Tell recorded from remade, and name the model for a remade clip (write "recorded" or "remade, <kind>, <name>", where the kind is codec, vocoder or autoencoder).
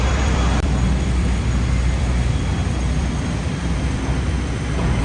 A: remade, vocoder, BigVGAN v2